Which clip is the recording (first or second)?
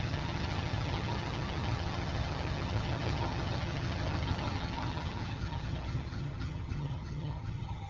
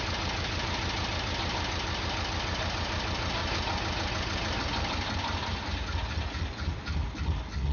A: second